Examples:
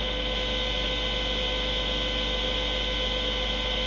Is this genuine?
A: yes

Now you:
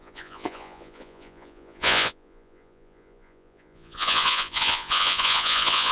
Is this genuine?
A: no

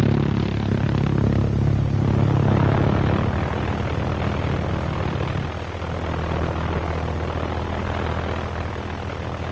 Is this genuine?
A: yes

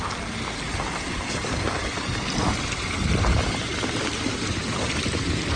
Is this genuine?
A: yes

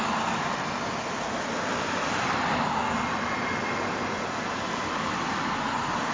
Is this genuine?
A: yes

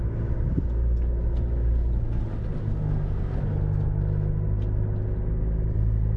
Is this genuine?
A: yes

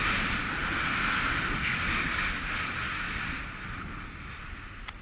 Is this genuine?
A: yes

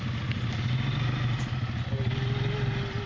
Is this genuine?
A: yes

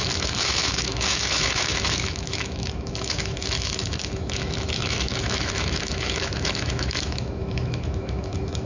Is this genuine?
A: no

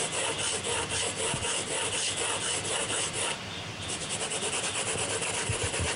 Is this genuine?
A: no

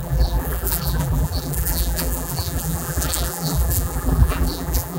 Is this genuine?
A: no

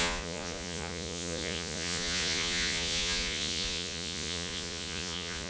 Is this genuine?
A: no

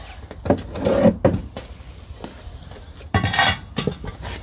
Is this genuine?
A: yes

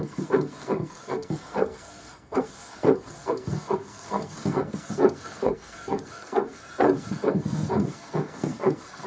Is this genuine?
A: no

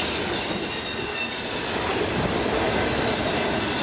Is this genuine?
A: yes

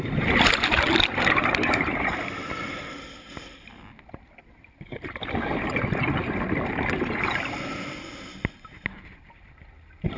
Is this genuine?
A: yes